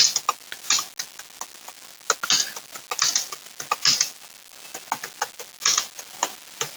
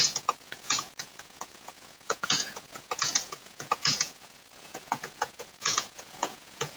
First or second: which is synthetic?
second